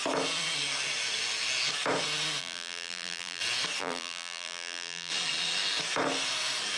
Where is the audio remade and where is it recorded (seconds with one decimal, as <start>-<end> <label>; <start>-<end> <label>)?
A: 0.0-2.4 recorded; 2.4-3.4 remade; 3.4-3.8 recorded; 3.8-5.1 remade; 5.1-6.8 recorded